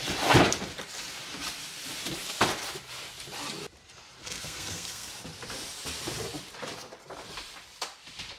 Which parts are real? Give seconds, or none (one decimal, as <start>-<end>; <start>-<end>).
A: 0.0-4.2; 5.1-8.4